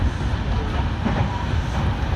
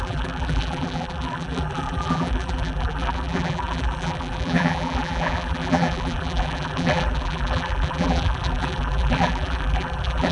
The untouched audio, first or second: first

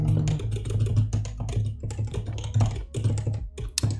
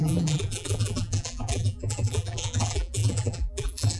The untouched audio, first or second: first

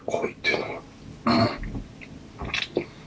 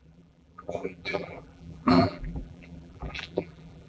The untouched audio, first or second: first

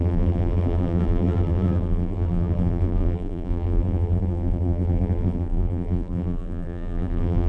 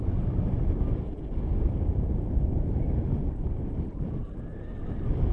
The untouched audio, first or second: second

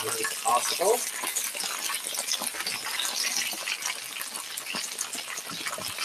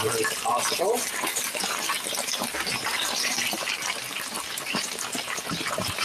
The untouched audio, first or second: first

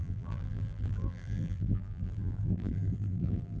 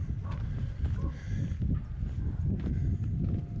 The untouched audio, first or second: second